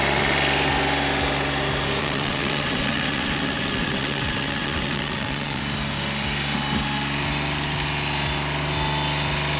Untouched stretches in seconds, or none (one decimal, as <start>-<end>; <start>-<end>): 0.0-2.0; 5.6-9.6